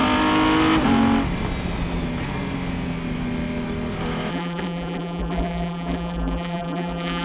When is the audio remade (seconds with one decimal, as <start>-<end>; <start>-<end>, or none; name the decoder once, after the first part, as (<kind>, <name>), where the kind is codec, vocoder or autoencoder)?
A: 4.3-7.2 (vocoder, BigVGAN v2)